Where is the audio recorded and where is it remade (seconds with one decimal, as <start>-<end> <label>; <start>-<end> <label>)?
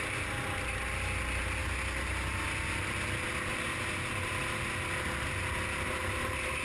0.0-6.6 recorded